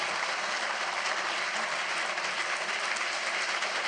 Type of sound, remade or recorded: recorded